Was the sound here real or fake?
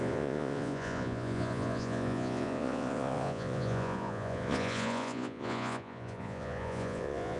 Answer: fake